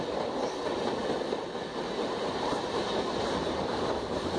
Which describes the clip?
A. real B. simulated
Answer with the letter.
A